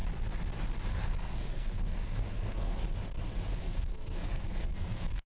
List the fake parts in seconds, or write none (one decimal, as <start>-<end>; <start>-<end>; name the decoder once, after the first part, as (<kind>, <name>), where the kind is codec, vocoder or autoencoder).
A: 1.0-2.8 (codec, SNAC); 3.6-5.2